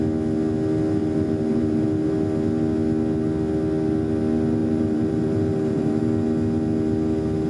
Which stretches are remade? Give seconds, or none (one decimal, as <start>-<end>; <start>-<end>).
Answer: 1.0-2.1; 4.6-6.0